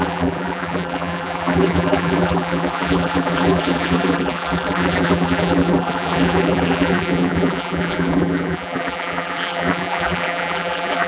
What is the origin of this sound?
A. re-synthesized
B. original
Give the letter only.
A